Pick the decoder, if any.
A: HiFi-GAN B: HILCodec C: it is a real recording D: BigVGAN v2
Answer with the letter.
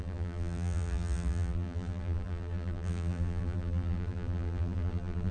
D